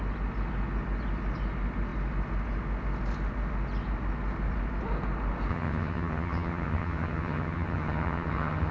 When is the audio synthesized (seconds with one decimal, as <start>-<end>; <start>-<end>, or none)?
5.5-8.7